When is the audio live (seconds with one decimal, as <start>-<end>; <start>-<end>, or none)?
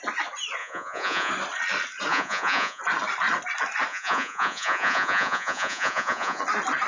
0.0-0.6; 1.3-2.1; 2.8-3.9; 6.4-6.9